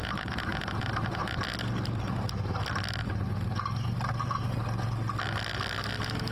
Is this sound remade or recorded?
recorded